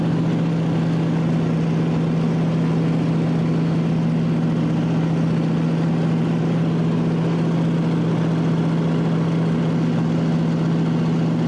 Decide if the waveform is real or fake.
real